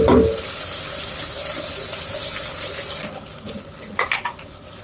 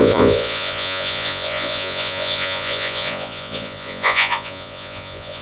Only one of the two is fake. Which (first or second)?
second